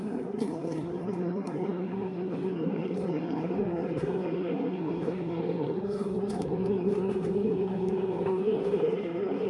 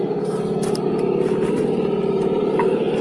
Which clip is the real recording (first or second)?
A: second